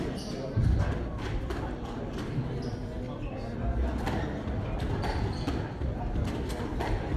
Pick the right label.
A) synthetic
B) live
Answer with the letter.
B